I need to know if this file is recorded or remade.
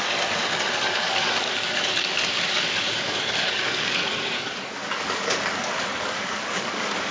remade